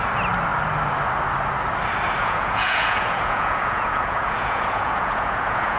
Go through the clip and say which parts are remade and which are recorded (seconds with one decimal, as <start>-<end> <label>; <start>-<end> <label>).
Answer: 0.0-2.2 recorded; 2.2-5.8 remade